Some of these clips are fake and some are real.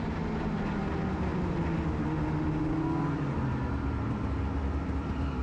real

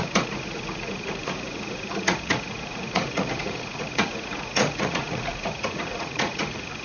fake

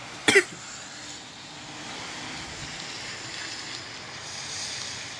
real